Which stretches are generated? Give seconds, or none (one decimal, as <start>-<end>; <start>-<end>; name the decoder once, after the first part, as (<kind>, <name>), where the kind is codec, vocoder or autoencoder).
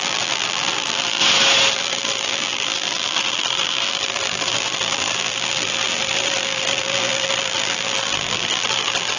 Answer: 0.0-1.2 (vocoder, BigVGAN v2); 1.7-9.2